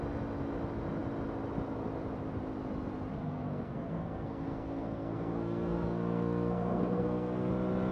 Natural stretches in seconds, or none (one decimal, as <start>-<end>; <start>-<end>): 0.0-3.1; 7.5-7.9